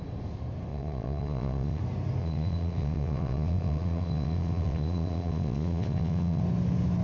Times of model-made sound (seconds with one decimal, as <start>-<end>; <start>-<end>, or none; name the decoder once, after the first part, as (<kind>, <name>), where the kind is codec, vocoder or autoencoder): 0.7-1.8 (vocoder, Vocos); 2.2-6.4